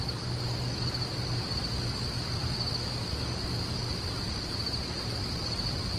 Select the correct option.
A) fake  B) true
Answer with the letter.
B